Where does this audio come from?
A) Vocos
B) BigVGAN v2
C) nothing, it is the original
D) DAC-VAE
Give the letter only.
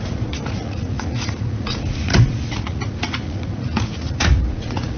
A